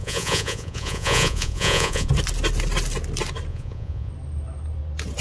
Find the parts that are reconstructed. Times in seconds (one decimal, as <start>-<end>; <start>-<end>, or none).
0.0-2.1; 3.5-4.1

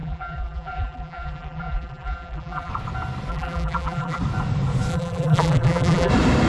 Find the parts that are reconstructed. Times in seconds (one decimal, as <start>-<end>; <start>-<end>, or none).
0.0-2.7; 3.3-4.2; 4.9-6.1

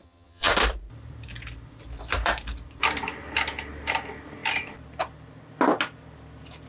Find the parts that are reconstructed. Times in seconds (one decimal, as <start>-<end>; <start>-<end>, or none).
0.0-0.5

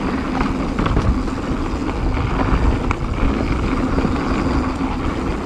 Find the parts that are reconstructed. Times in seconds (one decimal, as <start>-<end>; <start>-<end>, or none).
none

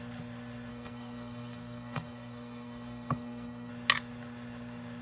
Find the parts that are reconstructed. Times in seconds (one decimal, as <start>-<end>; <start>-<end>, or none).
0.7-3.7

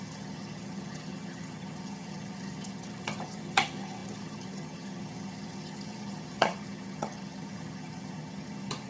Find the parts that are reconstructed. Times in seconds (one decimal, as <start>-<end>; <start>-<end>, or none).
0.0-8.9